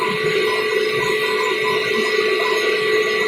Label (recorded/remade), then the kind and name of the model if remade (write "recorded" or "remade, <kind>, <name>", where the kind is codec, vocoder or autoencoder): recorded